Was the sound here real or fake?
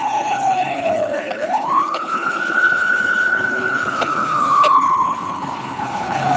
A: fake